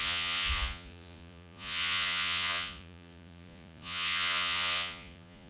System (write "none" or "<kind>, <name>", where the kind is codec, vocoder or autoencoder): vocoder, Vocos